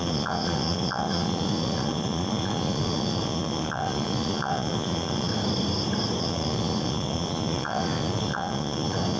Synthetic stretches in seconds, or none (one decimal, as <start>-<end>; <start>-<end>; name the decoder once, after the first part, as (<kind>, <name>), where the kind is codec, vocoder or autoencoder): 0.0-5.3 (vocoder, Vocos); 6.2-9.2